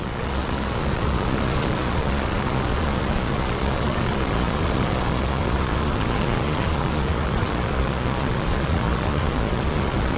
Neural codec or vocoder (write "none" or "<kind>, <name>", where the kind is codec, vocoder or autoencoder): vocoder, Vocos